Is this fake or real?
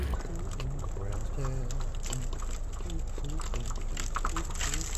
real